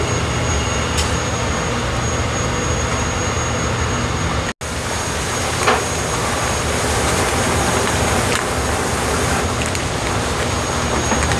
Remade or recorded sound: recorded